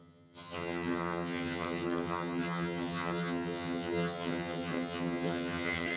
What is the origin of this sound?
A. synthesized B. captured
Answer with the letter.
A